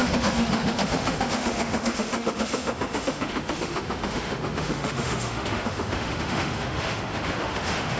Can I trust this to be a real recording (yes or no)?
no